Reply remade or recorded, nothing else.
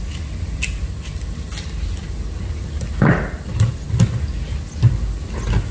recorded